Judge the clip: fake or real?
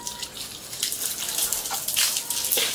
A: real